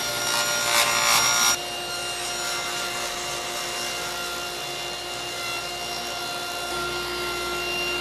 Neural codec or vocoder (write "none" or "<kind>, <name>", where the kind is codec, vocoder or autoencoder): none